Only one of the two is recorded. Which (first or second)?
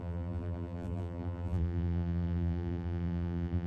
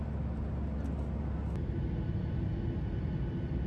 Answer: second